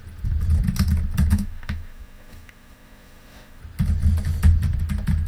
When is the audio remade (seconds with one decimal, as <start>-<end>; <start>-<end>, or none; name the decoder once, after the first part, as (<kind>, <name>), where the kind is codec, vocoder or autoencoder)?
1.3-3.6 (autoencoder, DAC-VAE)